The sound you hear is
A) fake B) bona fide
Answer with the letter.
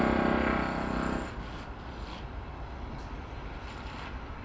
B